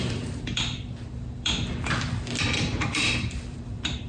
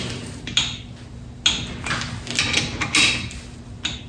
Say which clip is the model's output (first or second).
first